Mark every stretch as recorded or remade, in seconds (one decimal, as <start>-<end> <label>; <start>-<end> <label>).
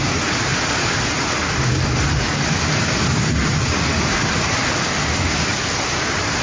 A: 0.0-6.4 recorded